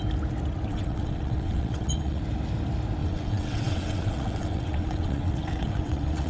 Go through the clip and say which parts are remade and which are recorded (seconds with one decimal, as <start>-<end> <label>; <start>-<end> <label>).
0.0-0.7 recorded; 0.7-2.2 remade; 2.2-3.0 recorded; 3.0-6.3 remade